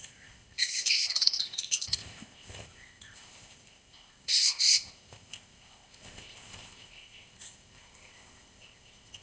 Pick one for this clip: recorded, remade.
remade